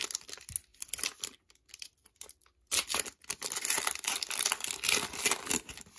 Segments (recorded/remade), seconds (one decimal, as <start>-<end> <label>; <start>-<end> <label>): 0.0-6.0 recorded